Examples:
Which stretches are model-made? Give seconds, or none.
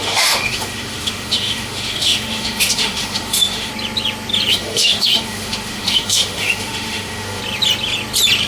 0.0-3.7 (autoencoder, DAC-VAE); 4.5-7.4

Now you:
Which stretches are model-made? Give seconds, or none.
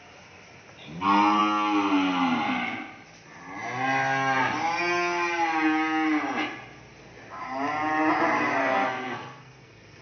8.6-10.0 (codec, SNAC)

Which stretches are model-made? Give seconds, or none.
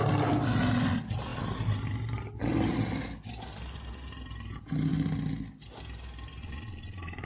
6.4-7.3 (vocoder, Vocos)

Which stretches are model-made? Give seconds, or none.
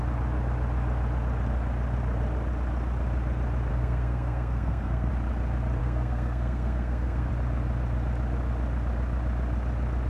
3.7-5.1 (codec, SNAC); 5.8-7.3